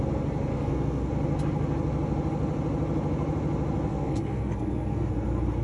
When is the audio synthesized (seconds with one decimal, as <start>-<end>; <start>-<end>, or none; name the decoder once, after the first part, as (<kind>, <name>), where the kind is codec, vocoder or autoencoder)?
0.5-1.1 (codec, SNAC); 3.9-5.1

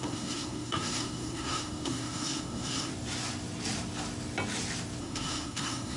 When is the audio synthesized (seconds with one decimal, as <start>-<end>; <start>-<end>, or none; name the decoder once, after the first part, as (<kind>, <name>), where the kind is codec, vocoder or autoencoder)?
0.0-2.9 (codec, SNAC); 5.0-6.0

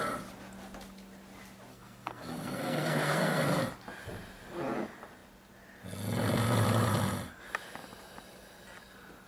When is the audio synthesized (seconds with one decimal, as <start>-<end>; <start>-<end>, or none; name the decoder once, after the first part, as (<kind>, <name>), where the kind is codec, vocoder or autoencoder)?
1.7-3.6 (codec, SNAC)